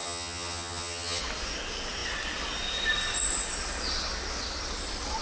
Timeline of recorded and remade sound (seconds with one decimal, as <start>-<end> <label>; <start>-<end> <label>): 0.0-1.2 remade; 1.2-5.2 recorded